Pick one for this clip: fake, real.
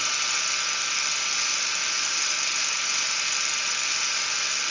real